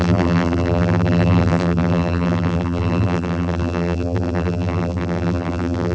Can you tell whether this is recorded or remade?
remade